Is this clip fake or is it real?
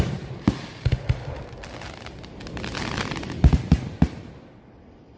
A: fake